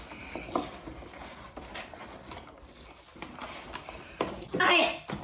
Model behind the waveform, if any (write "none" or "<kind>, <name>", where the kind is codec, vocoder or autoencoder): none